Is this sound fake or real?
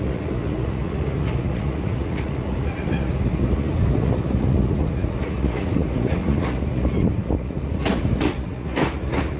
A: fake